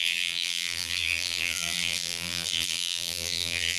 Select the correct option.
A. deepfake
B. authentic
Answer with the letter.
A